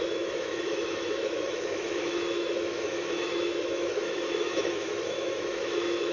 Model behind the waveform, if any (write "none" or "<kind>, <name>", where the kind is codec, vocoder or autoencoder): autoencoder, DAC-VAE